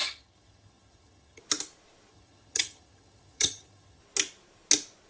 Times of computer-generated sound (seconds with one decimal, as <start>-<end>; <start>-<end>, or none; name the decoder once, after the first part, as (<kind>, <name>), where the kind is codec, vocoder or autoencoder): 0.0-1.4 (vocoder, HiFi-GAN); 2.1-4.0